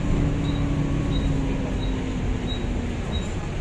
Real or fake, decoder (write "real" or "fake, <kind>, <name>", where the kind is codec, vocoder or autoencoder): real